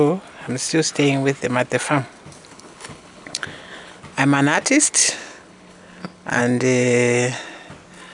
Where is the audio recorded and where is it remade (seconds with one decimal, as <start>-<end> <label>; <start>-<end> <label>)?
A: 0.0-2.5 recorded; 2.5-4.0 remade; 4.0-5.0 recorded; 5.0-6.4 remade; 6.4-8.1 recorded